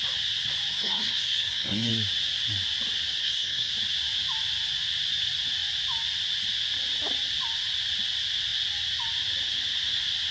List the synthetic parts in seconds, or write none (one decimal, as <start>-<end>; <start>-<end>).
0.7-1.9; 3.2-3.7